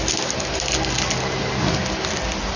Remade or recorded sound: recorded